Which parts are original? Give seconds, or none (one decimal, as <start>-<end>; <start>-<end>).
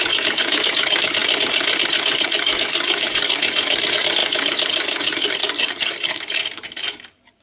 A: 1.2-2.0; 6.4-7.4